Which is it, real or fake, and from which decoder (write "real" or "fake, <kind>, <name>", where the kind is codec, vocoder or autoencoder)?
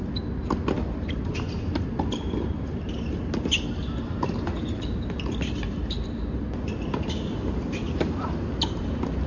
real